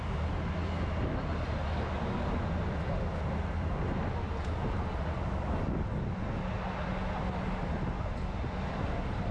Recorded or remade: recorded